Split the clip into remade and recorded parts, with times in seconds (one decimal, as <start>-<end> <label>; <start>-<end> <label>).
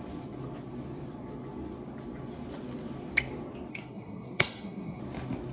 0.0-3.7 recorded; 3.7-5.0 remade; 5.0-5.5 recorded